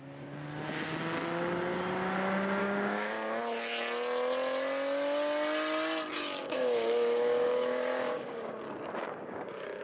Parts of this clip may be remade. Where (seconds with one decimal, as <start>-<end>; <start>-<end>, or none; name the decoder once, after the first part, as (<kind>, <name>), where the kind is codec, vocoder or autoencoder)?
2.6-3.4 (codec, DAC); 6.4-8.6; 9.0-9.8